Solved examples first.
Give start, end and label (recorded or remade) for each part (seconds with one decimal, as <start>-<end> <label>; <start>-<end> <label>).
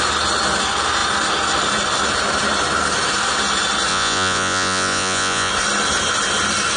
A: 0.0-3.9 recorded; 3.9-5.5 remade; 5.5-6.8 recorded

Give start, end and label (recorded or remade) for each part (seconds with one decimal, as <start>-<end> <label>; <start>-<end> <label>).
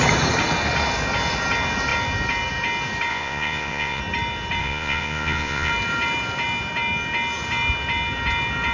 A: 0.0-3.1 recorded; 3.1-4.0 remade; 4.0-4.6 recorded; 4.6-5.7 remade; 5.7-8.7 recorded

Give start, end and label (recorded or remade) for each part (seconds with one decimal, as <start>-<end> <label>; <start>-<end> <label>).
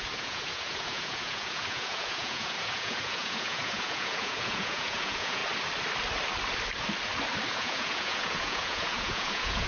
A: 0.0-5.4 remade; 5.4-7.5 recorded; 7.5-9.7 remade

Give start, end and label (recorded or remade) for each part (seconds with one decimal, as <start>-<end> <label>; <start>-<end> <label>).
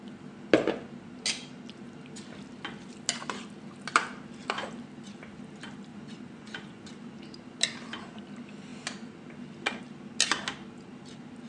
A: 0.0-5.9 recorded; 5.9-6.8 remade; 6.8-11.5 recorded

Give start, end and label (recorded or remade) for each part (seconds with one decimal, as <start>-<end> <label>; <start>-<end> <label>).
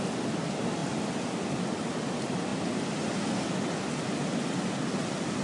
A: 0.0-5.4 recorded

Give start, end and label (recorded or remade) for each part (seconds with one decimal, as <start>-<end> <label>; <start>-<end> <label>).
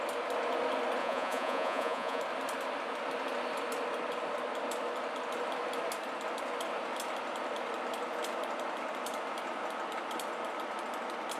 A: 0.0-1.0 recorded; 1.0-2.2 remade; 2.2-11.4 recorded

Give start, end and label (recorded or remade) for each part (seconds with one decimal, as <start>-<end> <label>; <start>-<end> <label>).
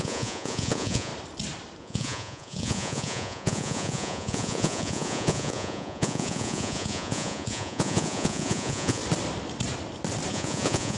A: 0.0-1.1 remade; 1.1-1.8 recorded; 1.8-9.0 remade; 9.0-10.3 recorded; 10.3-11.0 remade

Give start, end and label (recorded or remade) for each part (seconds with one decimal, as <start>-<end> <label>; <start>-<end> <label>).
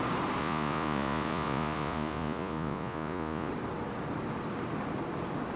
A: 0.0-0.4 recorded; 0.4-3.5 remade; 3.5-5.6 recorded